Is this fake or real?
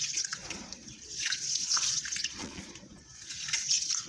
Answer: fake